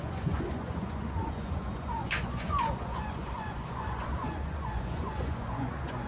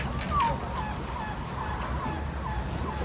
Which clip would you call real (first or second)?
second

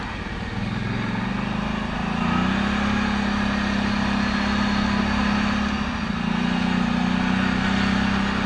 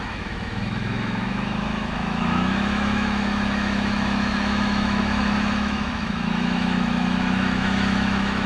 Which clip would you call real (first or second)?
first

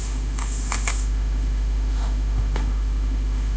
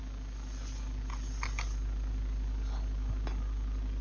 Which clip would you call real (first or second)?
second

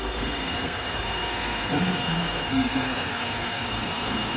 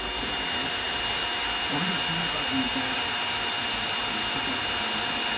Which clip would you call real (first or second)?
second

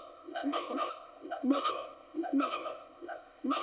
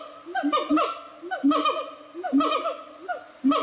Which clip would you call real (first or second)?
second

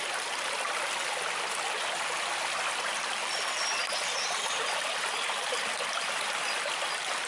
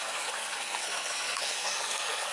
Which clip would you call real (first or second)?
first